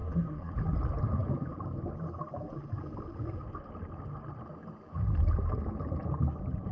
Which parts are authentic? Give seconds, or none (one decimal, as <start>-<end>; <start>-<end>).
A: 0.5-6.7